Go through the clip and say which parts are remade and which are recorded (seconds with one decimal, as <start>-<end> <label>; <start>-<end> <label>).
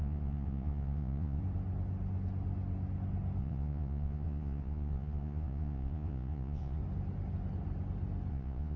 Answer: 0.0-1.4 remade; 1.4-3.4 recorded; 3.4-6.8 remade; 6.8-8.3 recorded; 8.3-8.8 remade